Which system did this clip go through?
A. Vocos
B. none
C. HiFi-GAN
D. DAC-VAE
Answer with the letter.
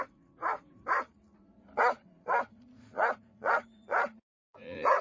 A